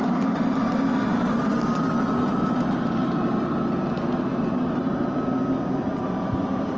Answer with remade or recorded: recorded